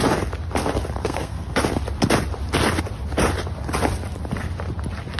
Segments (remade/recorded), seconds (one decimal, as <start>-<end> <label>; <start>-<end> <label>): 0.0-1.0 recorded; 1.0-1.6 remade; 1.6-5.2 recorded